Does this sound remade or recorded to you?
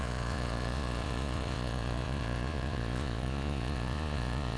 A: remade